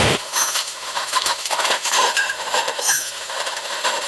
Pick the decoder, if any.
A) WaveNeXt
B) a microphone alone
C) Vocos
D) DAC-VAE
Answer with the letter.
D